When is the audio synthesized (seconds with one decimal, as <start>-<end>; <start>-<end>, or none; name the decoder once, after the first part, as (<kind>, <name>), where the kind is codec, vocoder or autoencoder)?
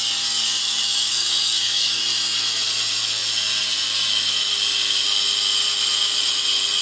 0.6-2.0 (codec, DAC)